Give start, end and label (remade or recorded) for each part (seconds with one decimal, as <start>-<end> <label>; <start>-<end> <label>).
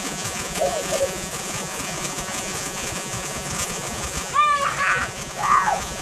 0.0-4.3 remade; 4.3-4.8 recorded; 4.8-6.0 remade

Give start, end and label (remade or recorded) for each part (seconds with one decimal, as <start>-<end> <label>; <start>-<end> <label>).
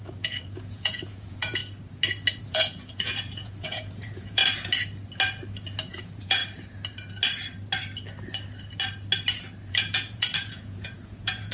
0.0-1.6 remade; 1.6-2.4 recorded; 2.4-4.4 remade; 4.4-5.9 recorded; 5.9-6.4 remade; 6.4-9.7 recorded; 9.7-11.5 remade